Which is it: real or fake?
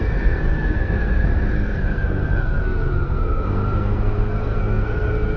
fake